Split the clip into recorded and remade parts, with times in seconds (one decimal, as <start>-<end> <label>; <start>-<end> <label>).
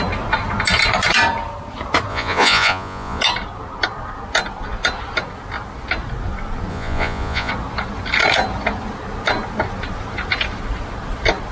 0.0-2.1 recorded; 2.1-3.2 remade; 3.2-6.7 recorded; 6.7-7.5 remade; 7.5-11.5 recorded